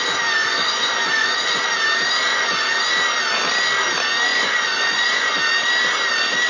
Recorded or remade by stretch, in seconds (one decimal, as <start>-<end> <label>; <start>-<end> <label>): 0.0-0.4 recorded; 0.4-1.6 remade; 1.6-2.3 recorded; 2.3-2.9 remade; 2.9-4.3 recorded; 4.3-5.3 remade; 5.3-6.5 recorded